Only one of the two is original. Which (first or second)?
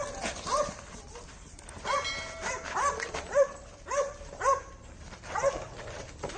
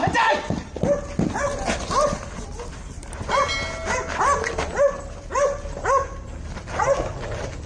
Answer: second